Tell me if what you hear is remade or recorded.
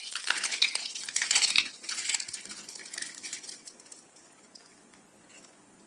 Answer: remade